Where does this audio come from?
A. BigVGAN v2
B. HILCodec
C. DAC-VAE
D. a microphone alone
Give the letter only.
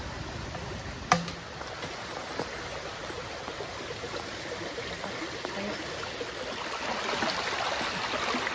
D